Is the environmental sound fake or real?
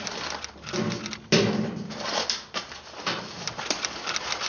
real